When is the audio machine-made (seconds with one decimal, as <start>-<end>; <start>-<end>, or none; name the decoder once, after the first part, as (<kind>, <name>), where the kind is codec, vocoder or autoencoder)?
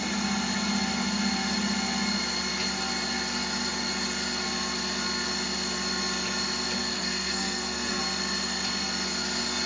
6.9-8.0 (codec, SNAC)